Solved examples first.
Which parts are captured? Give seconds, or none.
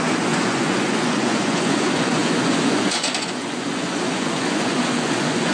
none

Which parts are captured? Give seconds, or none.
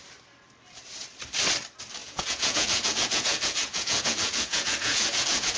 0.0-2.0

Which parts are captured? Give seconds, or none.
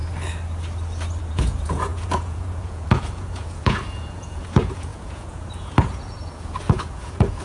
0.0-1.2